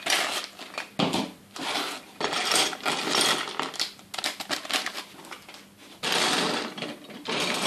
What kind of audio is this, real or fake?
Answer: real